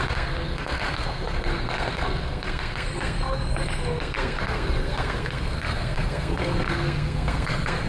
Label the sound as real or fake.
fake